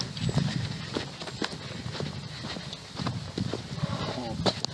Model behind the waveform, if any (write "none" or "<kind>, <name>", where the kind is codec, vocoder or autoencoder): none